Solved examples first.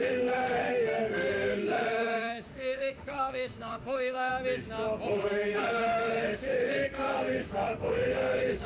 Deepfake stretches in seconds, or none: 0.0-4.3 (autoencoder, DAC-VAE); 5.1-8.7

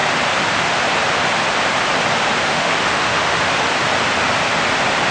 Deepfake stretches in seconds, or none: 2.5-3.5 (autoencoder, DAC-VAE)

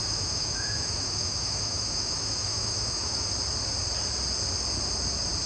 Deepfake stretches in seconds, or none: 0.0-3.3 (autoencoder, DAC-VAE)

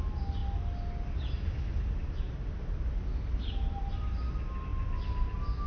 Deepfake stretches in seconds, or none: none

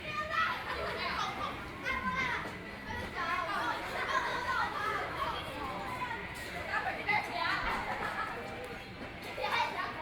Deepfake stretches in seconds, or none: 4.3-5.4 (autoencoder, DAC-VAE); 6.7-7.2

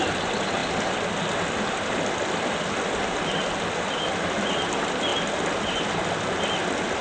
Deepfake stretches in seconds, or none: none